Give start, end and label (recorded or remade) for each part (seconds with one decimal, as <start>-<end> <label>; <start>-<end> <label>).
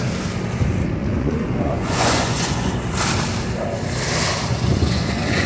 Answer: 0.0-1.0 recorded; 1.0-2.7 remade; 2.7-4.5 recorded; 4.5-5.5 remade